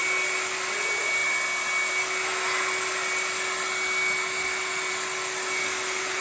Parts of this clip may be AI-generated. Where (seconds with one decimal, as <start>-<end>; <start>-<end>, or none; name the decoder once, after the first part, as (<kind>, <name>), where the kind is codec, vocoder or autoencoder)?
none